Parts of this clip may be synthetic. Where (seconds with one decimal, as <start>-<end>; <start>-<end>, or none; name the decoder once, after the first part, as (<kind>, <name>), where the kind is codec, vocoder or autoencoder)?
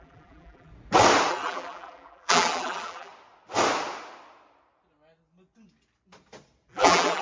0.0-0.7 (vocoder, BigVGAN v2); 1.3-3.1; 6.7-7.2